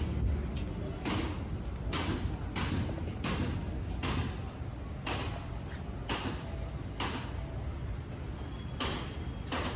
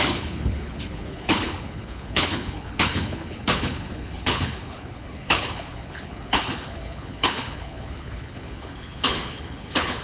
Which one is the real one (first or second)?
first